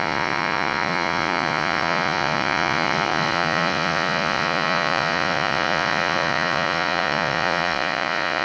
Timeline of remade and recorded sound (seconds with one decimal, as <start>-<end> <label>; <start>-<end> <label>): 0.0-8.4 remade